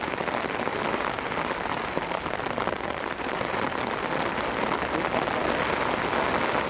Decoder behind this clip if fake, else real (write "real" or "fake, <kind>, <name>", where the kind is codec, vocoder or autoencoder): real